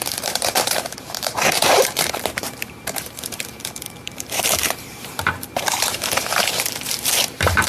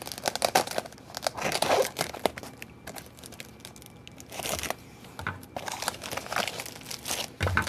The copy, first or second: first